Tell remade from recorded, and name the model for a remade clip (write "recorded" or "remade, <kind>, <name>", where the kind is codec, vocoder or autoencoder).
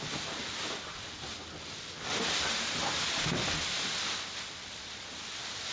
recorded